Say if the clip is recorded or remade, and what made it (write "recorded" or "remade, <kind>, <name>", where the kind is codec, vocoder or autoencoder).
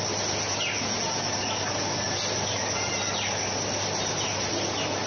recorded